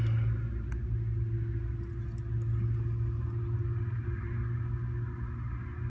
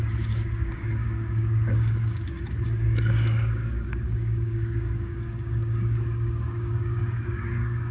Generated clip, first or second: second